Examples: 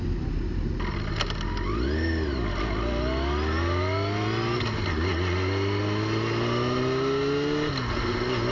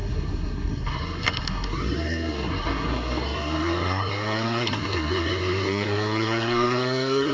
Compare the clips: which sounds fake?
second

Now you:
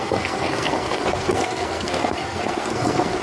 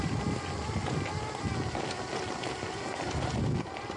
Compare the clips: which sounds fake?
first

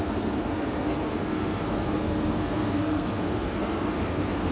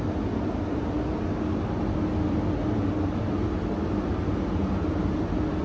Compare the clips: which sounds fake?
first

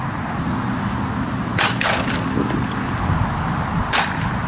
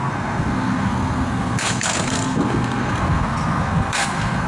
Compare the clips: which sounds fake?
second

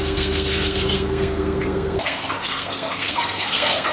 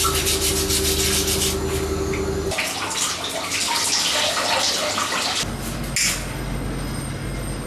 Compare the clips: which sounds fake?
first